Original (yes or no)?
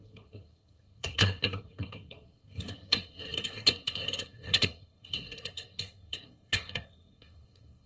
no